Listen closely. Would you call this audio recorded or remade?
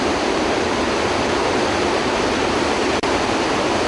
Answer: remade